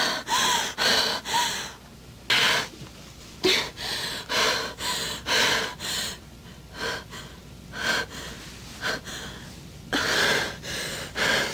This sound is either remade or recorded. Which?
recorded